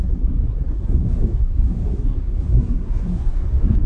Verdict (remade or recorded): remade